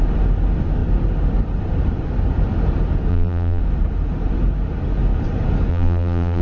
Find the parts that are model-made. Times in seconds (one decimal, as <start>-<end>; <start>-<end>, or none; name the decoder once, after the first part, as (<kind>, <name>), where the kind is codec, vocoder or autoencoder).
3.1-3.6 (vocoder, BigVGAN v2); 5.7-6.4